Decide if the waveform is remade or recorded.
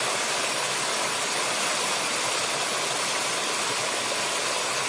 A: recorded